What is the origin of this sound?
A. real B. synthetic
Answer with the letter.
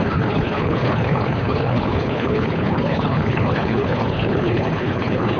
B